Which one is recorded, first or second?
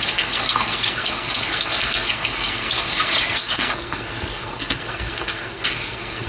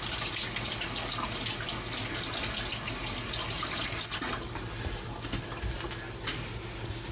second